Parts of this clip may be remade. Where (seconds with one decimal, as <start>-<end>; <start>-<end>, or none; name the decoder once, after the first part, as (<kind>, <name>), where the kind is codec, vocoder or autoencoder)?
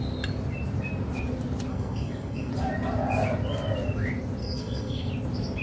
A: 1.7-2.5 (codec, SNAC); 4.4-5.1